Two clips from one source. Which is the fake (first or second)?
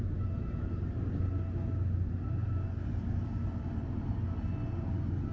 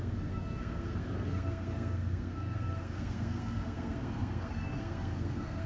second